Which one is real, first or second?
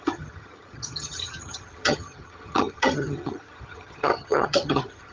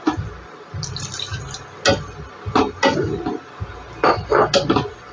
second